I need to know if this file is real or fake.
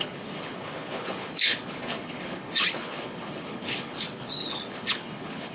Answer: fake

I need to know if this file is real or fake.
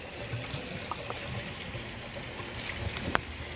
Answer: real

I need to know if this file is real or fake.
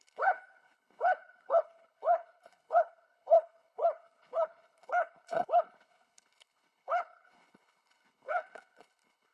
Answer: fake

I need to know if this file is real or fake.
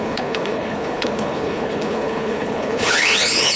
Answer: fake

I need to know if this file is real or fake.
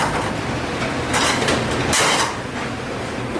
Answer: real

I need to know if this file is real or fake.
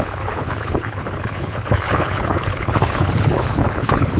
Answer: fake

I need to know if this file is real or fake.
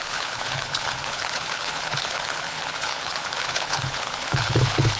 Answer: fake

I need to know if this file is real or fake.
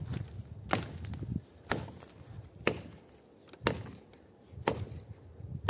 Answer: real